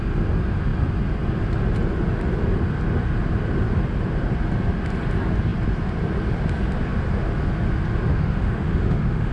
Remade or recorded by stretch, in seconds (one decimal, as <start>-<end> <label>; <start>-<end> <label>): 0.0-8.1 recorded; 8.1-9.3 remade